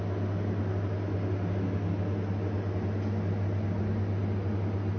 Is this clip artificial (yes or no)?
no